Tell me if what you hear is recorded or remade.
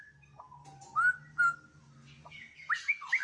recorded